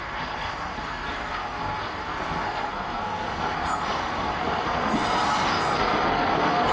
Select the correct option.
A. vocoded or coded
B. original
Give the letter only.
A